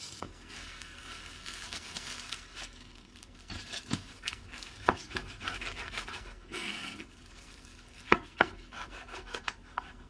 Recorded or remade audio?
remade